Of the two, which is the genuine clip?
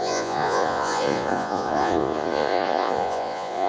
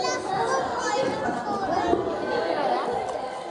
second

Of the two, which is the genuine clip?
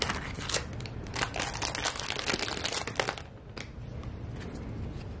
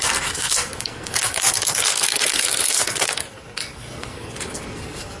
first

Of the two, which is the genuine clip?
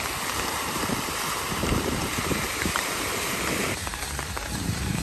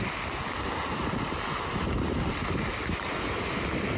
second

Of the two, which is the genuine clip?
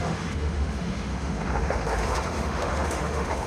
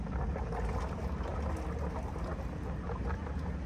second